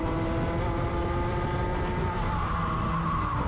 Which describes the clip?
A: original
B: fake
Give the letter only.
A